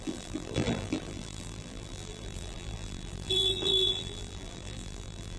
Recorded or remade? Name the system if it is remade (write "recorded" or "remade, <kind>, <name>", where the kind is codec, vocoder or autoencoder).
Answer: remade, vocoder, BigVGAN v2